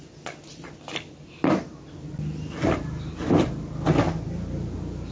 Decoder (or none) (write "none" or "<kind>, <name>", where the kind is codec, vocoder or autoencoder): none